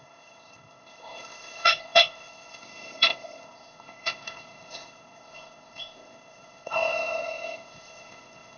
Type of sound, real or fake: fake